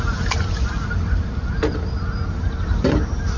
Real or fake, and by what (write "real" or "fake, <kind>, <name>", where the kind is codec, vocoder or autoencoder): fake, vocoder, BigVGAN v2